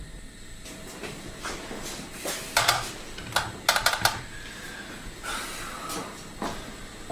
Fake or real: real